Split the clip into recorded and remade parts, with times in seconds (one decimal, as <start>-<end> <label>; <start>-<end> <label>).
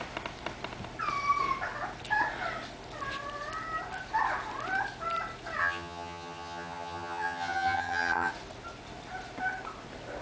0.0-5.6 recorded; 5.6-8.3 remade; 8.3-10.2 recorded